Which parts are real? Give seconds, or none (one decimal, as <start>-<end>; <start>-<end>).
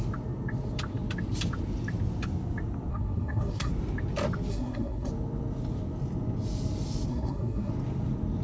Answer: 0.0-2.9; 3.7-4.5; 5.1-7.1; 7.7-8.4